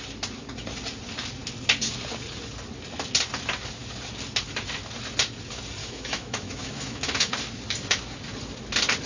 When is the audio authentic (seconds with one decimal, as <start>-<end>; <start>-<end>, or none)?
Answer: 0.0-5.8; 7.3-9.1